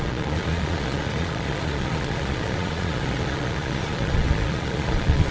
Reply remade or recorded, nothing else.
remade